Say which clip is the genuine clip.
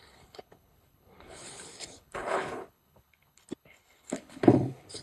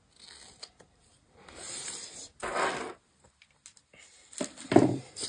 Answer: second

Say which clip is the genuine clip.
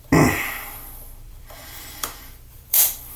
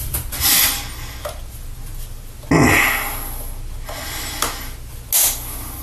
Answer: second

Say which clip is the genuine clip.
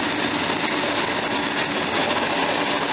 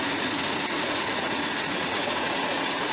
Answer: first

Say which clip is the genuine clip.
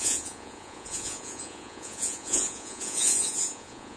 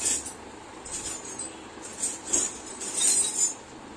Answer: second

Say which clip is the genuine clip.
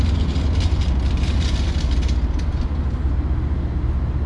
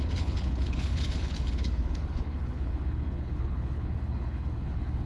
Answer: first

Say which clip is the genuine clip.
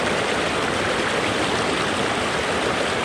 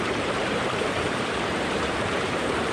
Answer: first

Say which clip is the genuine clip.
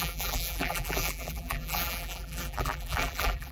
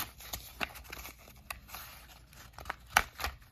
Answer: second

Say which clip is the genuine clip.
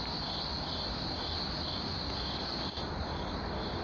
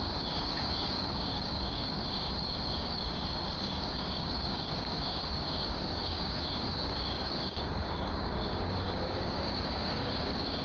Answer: first